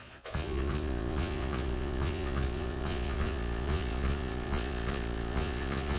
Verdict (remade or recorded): remade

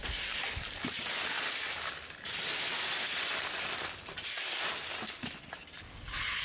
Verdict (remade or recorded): recorded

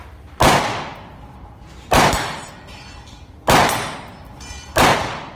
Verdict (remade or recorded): recorded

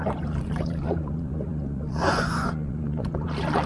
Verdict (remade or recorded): remade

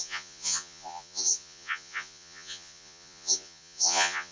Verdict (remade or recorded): remade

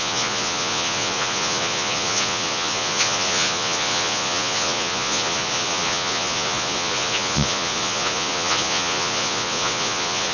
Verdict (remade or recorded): remade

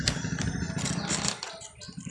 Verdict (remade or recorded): recorded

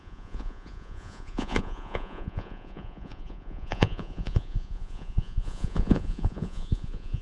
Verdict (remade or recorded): remade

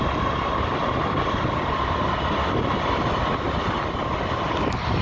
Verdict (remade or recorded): recorded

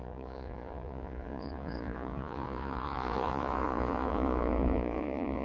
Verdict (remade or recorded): remade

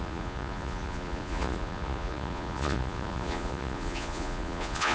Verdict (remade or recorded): remade